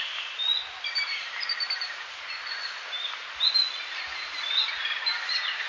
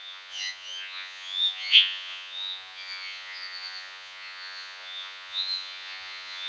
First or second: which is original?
first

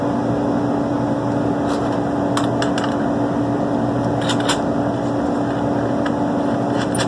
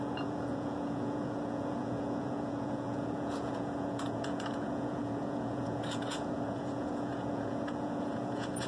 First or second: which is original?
first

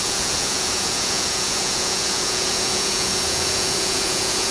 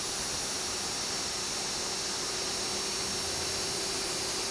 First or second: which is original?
second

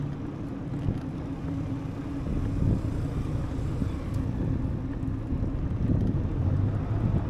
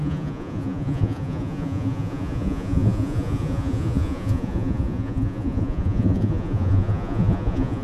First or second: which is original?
first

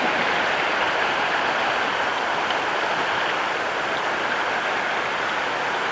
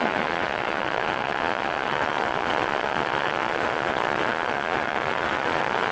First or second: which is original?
first